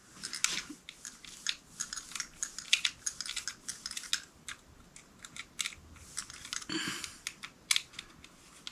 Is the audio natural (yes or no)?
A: yes